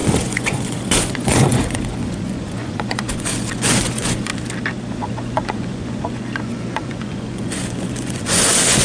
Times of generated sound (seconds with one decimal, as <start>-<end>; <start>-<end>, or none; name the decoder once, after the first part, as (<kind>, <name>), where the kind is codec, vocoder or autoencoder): 0.0-4.3 (vocoder, Vocos); 4.9-8.8